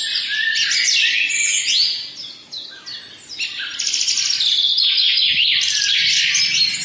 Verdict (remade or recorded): recorded